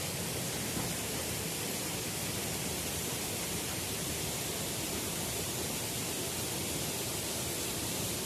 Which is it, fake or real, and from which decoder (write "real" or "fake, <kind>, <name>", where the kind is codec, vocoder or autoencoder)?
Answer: fake, vocoder, BigVGAN v2